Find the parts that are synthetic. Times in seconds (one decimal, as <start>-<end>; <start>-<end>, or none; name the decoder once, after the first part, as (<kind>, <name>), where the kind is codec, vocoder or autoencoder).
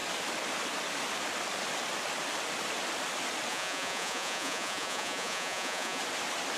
3.5-6.0 (vocoder, Vocos)